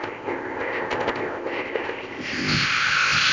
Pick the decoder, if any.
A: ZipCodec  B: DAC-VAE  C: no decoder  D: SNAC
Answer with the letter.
A